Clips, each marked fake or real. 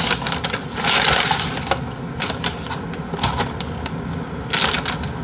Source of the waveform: real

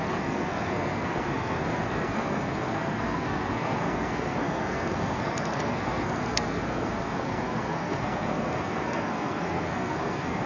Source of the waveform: fake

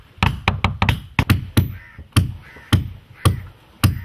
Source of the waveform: real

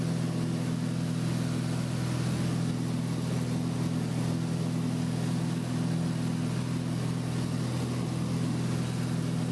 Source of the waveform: real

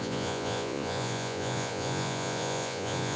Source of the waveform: fake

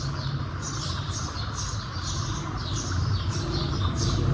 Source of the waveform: real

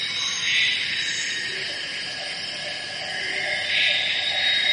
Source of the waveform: real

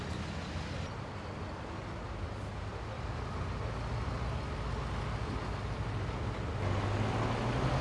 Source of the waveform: real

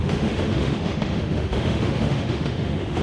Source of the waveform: fake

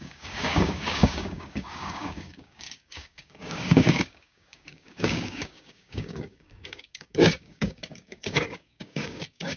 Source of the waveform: fake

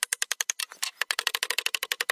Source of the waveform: real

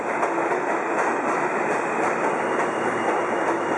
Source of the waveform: real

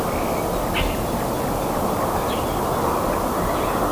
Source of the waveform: real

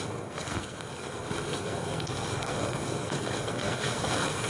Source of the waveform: fake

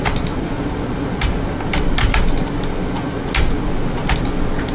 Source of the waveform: real